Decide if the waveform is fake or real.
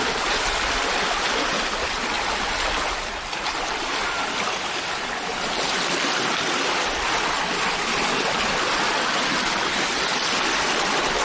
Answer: real